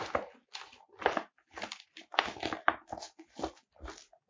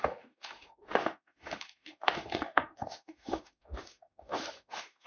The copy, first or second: second